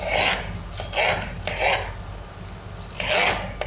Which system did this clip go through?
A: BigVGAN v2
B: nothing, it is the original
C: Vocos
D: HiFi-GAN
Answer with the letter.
B